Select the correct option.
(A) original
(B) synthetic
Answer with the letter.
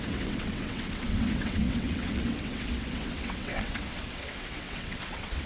B